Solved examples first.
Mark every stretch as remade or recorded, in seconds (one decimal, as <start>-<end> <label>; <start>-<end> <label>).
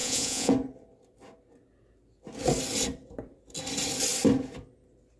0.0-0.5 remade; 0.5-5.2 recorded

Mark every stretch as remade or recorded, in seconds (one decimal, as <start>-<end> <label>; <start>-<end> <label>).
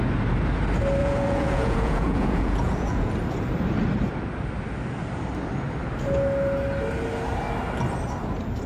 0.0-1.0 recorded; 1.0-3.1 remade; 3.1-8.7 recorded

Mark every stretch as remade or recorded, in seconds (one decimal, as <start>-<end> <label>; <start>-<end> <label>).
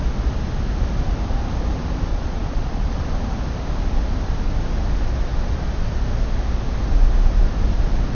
0.0-2.1 recorded; 2.1-2.9 remade; 2.9-8.1 recorded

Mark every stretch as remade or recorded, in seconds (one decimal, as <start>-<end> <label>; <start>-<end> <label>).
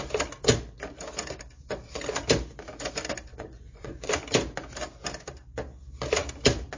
0.0-3.3 recorded; 3.3-4.1 remade; 4.1-6.8 recorded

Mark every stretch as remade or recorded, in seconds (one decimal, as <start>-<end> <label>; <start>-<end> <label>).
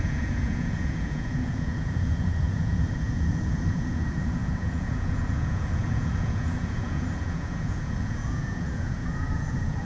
0.0-9.8 remade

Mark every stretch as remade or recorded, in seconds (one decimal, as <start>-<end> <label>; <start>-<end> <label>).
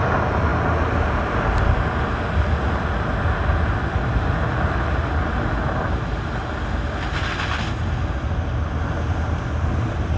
0.0-10.2 recorded